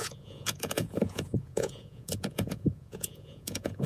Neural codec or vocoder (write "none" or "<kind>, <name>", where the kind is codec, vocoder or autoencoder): vocoder, Vocos